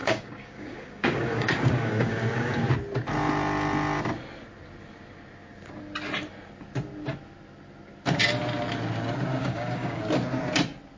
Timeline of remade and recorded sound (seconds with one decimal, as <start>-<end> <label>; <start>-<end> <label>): 0.0-2.7 remade; 2.7-9.4 recorded; 9.4-10.0 remade; 10.0-11.0 recorded